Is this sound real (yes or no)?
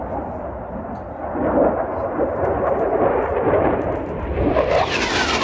yes